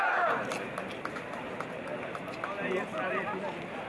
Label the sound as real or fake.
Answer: real